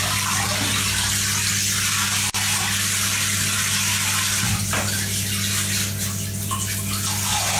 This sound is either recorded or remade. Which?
recorded